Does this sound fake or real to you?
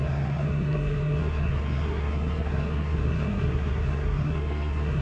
fake